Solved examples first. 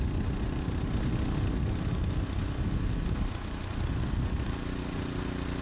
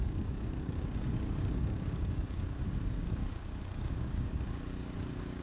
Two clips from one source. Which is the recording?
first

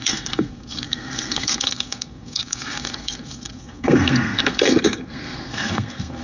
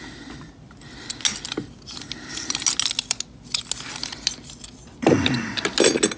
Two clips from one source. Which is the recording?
second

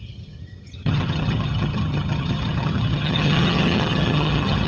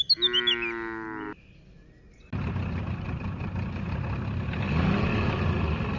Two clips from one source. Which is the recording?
second